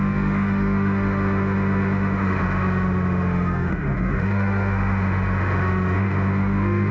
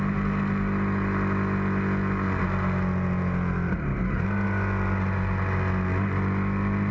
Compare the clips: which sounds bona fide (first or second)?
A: second